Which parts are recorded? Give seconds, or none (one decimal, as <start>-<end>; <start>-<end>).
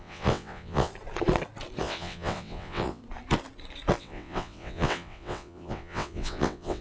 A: 0.9-1.8; 3.0-4.0